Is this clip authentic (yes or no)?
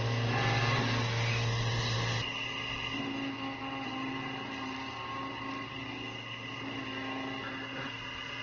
yes